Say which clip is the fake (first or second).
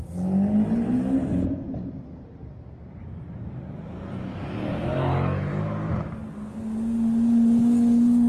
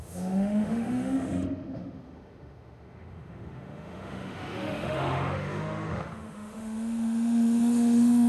second